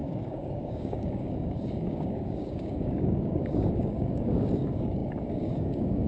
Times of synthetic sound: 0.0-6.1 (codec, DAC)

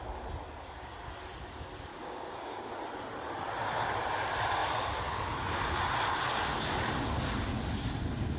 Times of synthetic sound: 1.9-2.7 (codec, DAC)

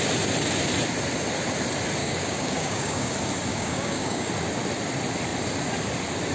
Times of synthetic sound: 2.0-3.1 (codec, DAC); 3.5-4.3

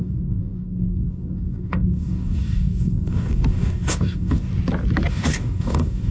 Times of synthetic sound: 0.0-4.5 (codec, DAC); 5.1-6.1

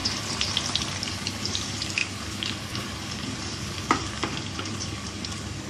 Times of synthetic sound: 1.0-5.7 (codec, DAC)

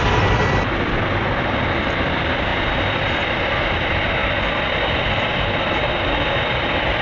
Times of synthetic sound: none